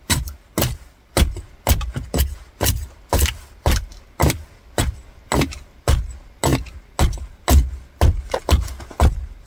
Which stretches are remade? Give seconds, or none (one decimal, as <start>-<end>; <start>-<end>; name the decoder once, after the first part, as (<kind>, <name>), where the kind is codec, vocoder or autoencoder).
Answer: none